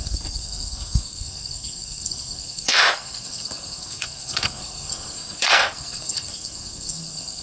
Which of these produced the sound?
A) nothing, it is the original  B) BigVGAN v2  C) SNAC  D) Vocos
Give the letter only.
C